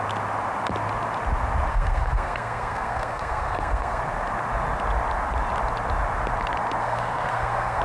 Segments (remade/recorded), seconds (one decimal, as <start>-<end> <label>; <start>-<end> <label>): 0.0-1.7 recorded; 1.7-4.0 remade; 4.0-6.8 recorded; 6.8-7.8 remade

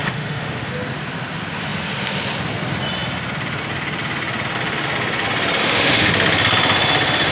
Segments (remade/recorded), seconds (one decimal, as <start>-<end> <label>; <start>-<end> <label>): 0.0-0.7 remade; 0.7-5.6 recorded; 5.6-6.1 remade; 6.1-7.3 recorded